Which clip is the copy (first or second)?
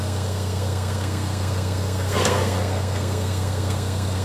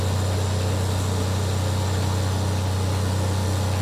first